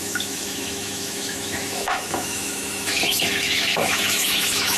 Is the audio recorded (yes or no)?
no